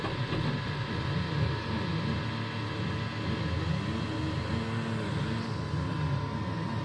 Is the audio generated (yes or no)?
no